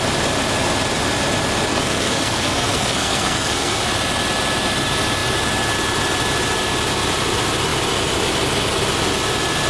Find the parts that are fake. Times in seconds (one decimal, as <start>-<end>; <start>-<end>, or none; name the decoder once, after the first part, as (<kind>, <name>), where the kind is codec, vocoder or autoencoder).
1.7-3.8 (codec, SNAC)

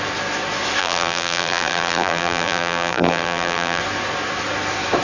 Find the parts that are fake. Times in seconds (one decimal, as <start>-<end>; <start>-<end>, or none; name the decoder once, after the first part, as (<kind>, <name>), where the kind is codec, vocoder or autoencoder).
0.8-3.8 (vocoder, BigVGAN v2)

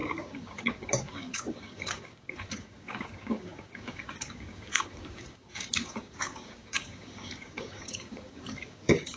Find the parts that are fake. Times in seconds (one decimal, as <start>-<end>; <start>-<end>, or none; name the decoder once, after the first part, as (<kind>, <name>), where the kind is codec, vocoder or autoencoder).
0.0-9.2 (codec, DAC)

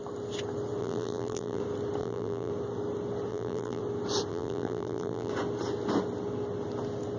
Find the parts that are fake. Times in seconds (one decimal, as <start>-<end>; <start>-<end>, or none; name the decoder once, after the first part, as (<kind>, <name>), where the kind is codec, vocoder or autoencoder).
0.8-1.6 (vocoder, BigVGAN v2); 2.0-2.5; 3.3-3.8; 4.3-5.3

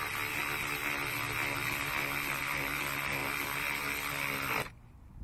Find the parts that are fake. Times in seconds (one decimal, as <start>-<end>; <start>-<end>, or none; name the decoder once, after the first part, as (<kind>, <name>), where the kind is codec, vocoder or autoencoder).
none

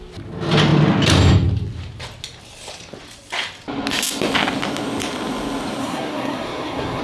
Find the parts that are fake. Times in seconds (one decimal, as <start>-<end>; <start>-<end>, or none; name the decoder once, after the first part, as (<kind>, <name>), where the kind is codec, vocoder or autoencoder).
5.8-7.0 (codec, SNAC)

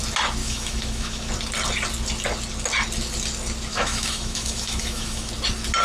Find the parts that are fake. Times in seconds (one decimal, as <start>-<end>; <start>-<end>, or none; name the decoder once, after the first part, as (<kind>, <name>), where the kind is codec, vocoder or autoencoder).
0.4-1.3 (autoencoder, DAC-VAE); 3.7-5.3